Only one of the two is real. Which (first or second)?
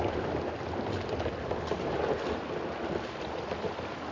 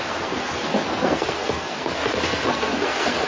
first